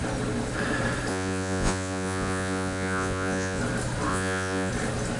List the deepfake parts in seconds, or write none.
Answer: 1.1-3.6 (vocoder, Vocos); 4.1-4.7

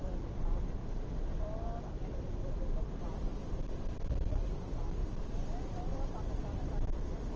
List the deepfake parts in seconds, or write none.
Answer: 0.0-0.8 (vocoder, BigVGAN v2); 1.4-7.4

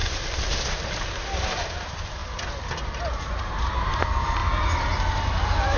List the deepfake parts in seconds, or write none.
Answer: 1.7-2.2 (vocoder, BigVGAN v2); 3.1-4.4; 5.1-5.8

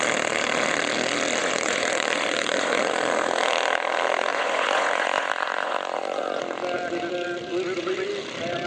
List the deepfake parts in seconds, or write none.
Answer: 1.4-2.9 (vocoder, Vocos); 4.3-6.4

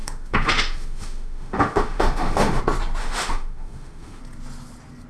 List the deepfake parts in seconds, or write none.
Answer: 0.0-2.6 (autoencoder, DAC-VAE); 3.0-4.2

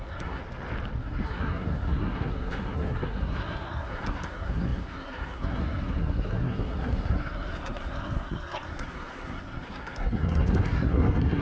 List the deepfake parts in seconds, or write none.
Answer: 0.0-0.4 (codec, SNAC); 1.0-11.4

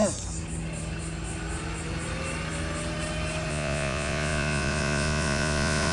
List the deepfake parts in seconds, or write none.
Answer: 3.5-5.9 (vocoder, Vocos)

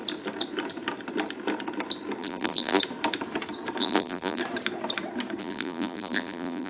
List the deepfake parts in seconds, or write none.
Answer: 2.2-2.8 (vocoder, BigVGAN v2); 3.8-4.4; 5.4-6.7